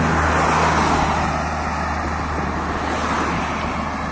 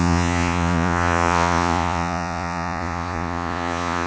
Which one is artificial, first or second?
second